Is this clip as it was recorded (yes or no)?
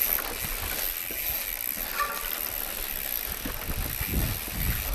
yes